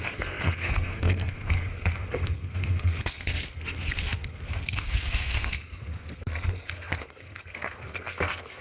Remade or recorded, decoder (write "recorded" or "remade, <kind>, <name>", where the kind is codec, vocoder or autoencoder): remade, codec, SNAC